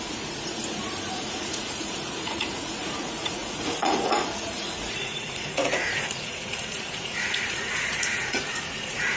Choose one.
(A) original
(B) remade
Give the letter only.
B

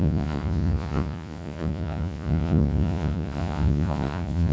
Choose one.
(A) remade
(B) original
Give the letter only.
A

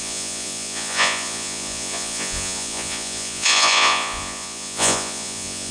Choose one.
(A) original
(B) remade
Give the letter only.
B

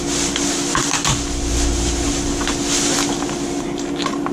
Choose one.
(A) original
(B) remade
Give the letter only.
A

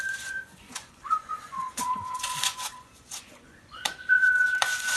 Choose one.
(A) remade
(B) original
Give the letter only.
A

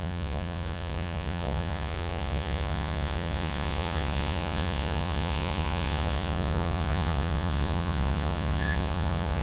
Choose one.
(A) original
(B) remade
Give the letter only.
B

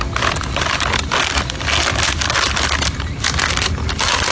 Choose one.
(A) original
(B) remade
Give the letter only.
A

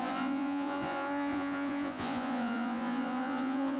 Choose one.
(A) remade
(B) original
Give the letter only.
A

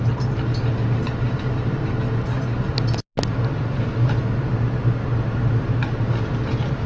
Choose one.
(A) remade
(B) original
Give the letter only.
B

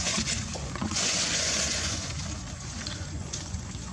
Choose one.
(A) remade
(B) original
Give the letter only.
A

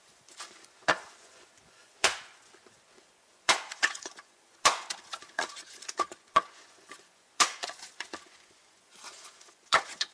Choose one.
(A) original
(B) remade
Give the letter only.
B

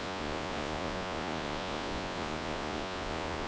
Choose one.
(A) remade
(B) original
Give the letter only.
A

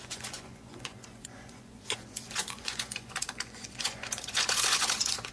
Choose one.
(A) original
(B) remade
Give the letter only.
B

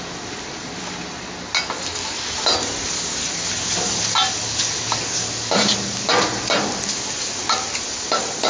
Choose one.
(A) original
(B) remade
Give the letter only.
A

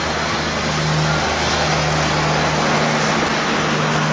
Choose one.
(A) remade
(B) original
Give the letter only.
B